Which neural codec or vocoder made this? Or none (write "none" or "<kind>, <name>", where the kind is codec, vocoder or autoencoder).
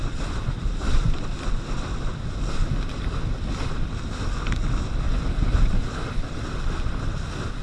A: none